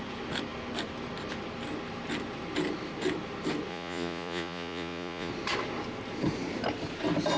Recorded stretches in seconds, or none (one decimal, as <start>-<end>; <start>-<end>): 0.0-3.7; 5.3-7.4

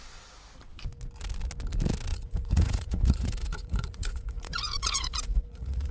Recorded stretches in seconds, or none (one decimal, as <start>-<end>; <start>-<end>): 0.0-2.1